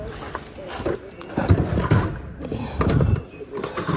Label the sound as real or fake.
real